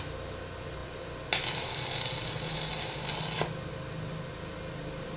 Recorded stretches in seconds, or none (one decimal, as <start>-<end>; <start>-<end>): 0.0-5.2